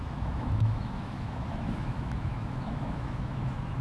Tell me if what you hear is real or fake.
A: fake